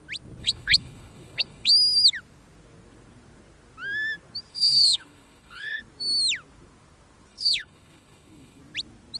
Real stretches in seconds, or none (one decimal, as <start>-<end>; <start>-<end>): 0.0-0.4; 1.7-4.5; 5.8-7.3; 8.6-9.2